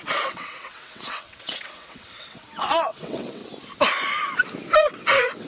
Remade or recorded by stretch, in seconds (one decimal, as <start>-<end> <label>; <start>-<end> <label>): 0.0-3.4 remade; 3.4-4.8 recorded; 4.8-5.5 remade